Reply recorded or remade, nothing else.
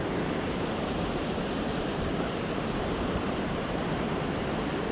remade